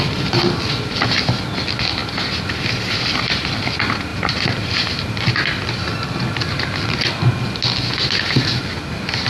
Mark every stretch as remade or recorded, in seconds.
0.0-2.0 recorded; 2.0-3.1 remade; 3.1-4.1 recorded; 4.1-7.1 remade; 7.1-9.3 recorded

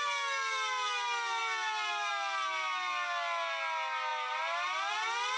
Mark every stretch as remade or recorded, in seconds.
0.0-5.4 recorded